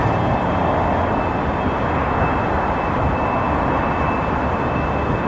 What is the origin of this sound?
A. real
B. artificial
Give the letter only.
A